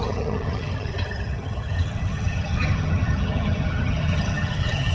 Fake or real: fake